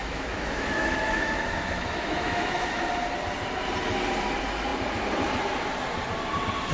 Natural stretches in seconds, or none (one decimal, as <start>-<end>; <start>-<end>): 2.8-6.7